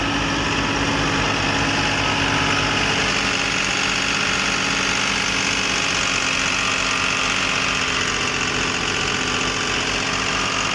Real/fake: real